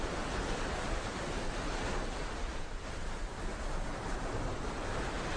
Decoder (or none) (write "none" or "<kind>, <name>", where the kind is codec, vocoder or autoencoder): none